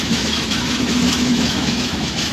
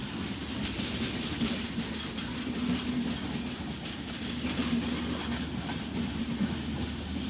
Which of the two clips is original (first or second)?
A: second